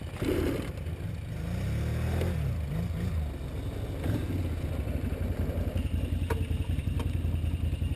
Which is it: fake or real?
real